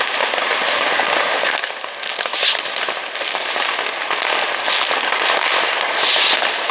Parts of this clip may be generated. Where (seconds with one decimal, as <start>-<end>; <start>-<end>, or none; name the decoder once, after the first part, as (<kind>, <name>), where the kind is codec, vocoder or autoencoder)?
none